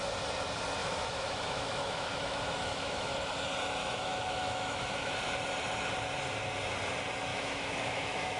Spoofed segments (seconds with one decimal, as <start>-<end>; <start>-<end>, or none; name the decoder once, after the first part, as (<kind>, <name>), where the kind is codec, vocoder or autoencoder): 0.8-3.1 (autoencoder, DAC-VAE); 3.8-5.1; 7.3-8.4